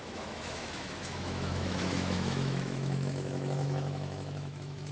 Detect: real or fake fake